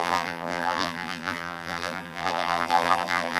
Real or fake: fake